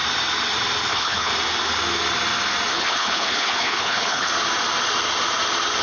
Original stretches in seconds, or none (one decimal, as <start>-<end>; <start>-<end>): 0.0-0.9; 1.3-2.7; 4.3-5.8